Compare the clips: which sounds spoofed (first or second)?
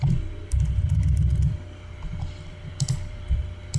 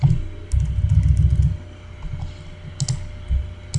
first